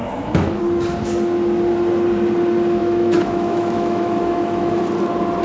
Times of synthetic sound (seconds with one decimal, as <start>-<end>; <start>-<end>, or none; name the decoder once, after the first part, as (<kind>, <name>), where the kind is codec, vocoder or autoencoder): 0.0-0.6 (autoencoder, DAC-VAE); 2.8-4.8